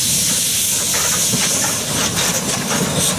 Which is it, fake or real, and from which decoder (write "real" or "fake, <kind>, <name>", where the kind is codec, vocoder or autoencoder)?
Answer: real